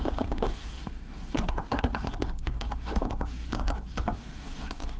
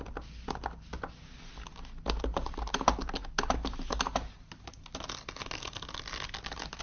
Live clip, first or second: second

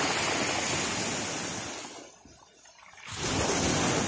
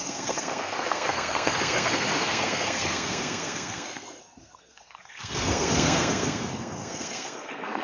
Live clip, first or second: first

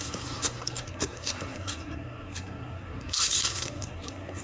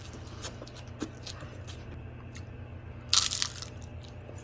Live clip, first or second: second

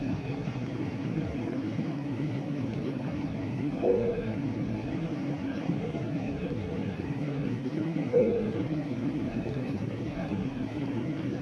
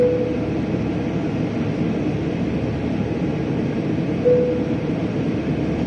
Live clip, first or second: second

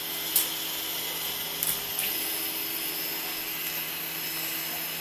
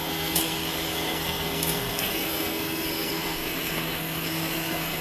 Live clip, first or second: first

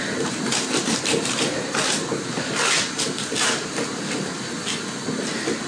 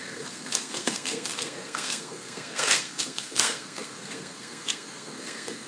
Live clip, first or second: first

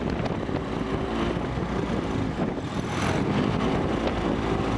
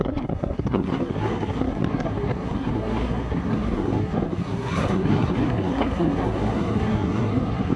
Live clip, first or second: first